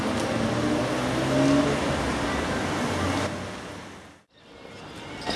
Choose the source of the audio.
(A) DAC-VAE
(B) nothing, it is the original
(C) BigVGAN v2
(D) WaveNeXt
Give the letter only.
B